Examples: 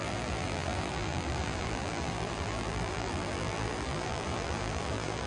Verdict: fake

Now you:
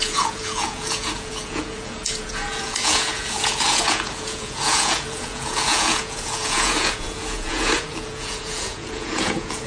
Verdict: fake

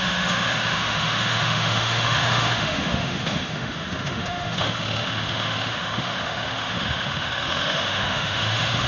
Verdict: fake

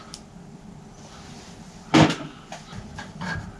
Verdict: real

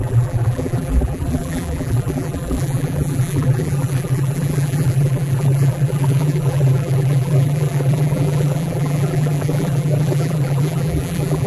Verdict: fake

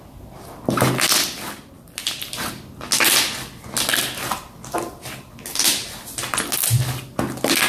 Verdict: real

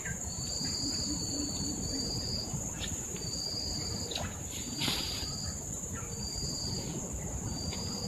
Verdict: fake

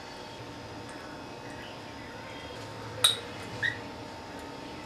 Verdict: real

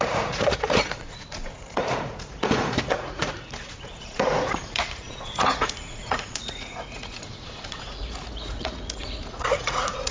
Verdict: fake